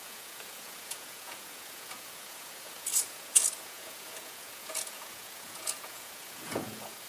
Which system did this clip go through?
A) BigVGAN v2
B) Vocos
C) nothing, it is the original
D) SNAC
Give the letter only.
B